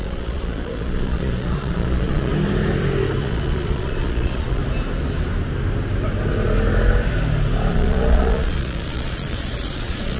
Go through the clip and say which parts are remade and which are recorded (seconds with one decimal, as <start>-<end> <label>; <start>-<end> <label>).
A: 0.0-2.3 remade; 2.3-3.2 recorded; 3.2-4.6 remade; 4.6-7.7 recorded; 7.7-10.2 remade